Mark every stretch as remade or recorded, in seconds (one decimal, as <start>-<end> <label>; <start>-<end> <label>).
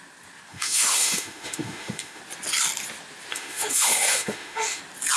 0.0-0.5 recorded; 0.5-2.2 remade; 2.2-3.3 recorded; 3.3-4.8 remade; 4.8-5.2 recorded